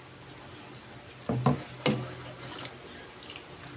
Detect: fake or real real